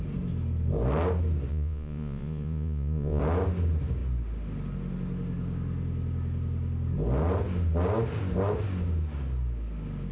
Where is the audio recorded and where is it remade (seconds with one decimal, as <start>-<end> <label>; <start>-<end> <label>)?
0.0-1.5 recorded; 1.5-3.2 remade; 3.2-10.1 recorded

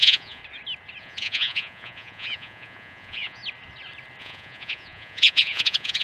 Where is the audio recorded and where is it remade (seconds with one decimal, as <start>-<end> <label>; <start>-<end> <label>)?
0.0-0.4 remade; 0.4-1.0 recorded; 1.0-3.4 remade; 3.4-4.2 recorded; 4.2-6.0 remade

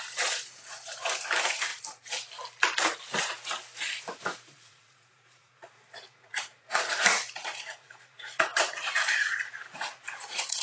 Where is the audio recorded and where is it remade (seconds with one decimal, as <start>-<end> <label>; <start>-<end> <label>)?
0.0-1.7 remade; 1.7-4.2 recorded; 4.2-10.6 remade

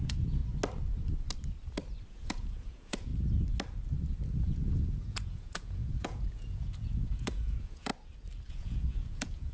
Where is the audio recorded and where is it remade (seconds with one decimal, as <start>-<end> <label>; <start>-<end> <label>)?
0.0-0.4 remade; 0.4-2.1 recorded; 2.1-3.1 remade; 3.1-4.4 recorded; 4.4-7.9 remade; 7.9-8.5 recorded; 8.5-9.5 remade

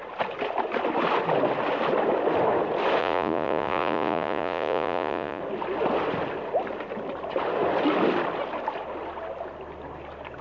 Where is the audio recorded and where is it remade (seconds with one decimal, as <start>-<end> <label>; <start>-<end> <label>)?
0.0-3.0 recorded; 3.0-5.4 remade; 5.4-10.4 recorded

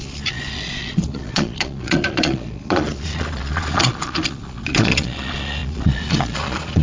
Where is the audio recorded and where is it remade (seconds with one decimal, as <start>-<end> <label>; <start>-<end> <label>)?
0.0-6.8 remade

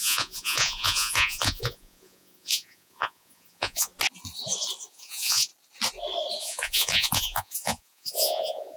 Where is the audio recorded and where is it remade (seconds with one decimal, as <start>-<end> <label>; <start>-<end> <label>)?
0.0-3.9 remade; 3.9-4.9 recorded; 4.9-5.5 remade; 5.5-6.4 recorded; 6.4-8.8 remade

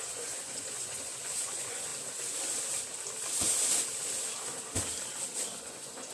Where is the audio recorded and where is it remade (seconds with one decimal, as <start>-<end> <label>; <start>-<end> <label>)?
0.0-1.9 remade; 1.9-5.6 recorded; 5.6-6.1 remade